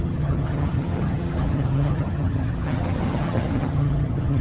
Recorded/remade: remade